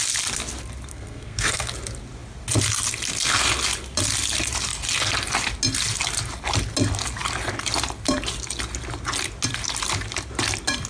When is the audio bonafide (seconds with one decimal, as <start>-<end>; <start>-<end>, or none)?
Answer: 0.0-0.9; 1.7-10.9